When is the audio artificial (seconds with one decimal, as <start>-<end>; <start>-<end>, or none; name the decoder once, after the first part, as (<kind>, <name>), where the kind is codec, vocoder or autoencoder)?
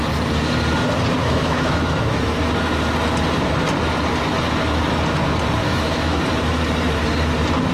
1.2-2.2 (autoencoder, DAC-VAE); 5.6-6.2